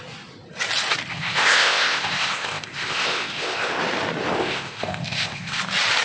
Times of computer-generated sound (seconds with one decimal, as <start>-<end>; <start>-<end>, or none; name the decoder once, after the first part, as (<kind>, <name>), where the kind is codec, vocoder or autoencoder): 1.1-3.8 (codec, ZipCodec); 4.3-5.6